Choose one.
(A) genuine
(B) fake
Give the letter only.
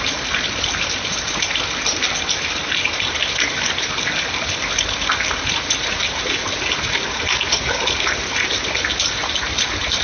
A